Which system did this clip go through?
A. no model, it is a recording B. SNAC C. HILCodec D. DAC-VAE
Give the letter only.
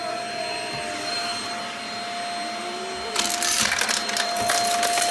A